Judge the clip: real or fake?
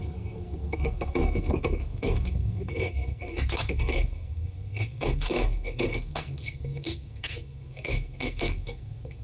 fake